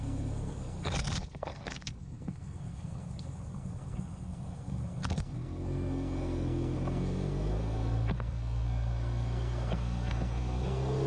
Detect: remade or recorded remade